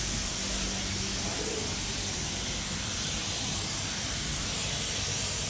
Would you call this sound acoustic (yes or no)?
yes